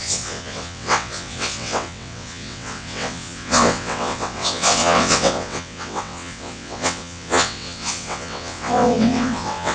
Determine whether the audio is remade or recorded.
remade